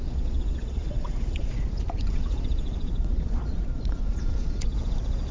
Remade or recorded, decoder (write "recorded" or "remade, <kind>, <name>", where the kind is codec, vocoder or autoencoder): remade, vocoder, Vocos